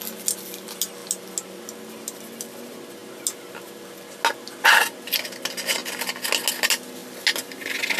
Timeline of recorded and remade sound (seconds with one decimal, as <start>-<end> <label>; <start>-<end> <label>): 0.0-8.0 recorded